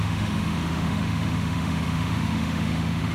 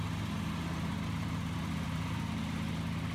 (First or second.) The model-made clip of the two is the first